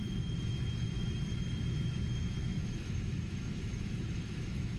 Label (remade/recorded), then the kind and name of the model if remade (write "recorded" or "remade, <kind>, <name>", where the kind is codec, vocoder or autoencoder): remade, autoencoder, DAC-VAE